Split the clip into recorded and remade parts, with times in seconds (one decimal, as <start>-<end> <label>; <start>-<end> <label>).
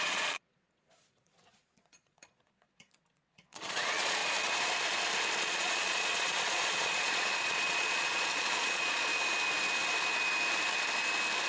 0.0-4.2 remade; 4.2-5.4 recorded; 5.4-9.1 remade; 9.1-11.5 recorded